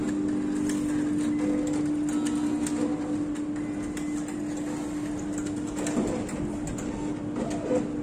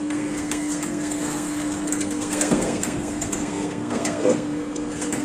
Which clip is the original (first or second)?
first